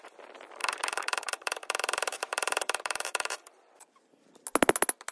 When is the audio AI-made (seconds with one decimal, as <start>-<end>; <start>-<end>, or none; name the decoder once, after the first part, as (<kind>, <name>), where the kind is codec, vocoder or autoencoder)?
0.6-3.7 (vocoder, BigVGAN v2)